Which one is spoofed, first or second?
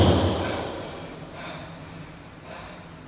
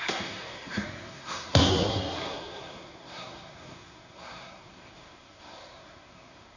second